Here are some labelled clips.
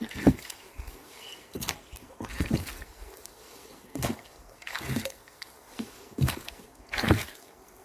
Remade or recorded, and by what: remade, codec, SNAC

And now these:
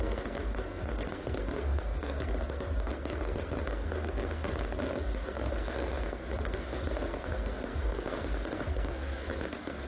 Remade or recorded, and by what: remade, codec, SNAC